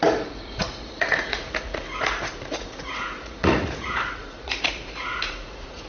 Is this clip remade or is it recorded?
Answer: remade